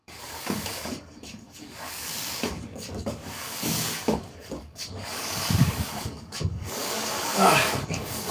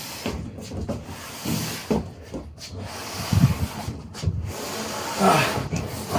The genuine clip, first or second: second